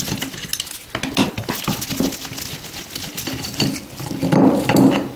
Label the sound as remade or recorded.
recorded